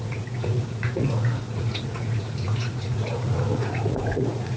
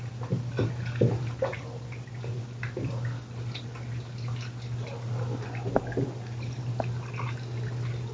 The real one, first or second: second